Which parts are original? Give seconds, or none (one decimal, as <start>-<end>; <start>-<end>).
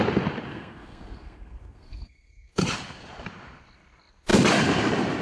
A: 0.0-0.5; 2.6-5.2